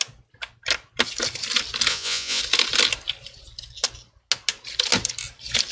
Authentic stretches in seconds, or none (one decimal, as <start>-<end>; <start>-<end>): 0.0-1.9; 2.4-5.7